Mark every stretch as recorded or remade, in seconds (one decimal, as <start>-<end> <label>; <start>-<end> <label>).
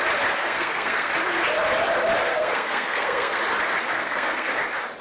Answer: 0.0-0.4 recorded; 0.4-1.1 remade; 1.1-2.3 recorded; 2.3-3.4 remade; 3.4-3.9 recorded; 3.9-4.5 remade; 4.5-5.0 recorded